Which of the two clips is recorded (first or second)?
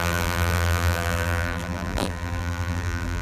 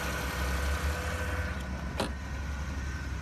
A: second